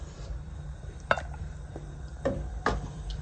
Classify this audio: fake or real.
fake